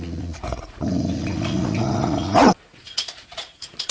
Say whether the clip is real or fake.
fake